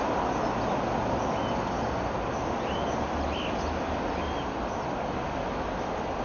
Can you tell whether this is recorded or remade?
recorded